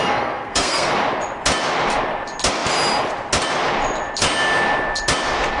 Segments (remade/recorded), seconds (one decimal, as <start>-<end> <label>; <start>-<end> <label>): 0.0-0.9 remade; 0.9-5.6 recorded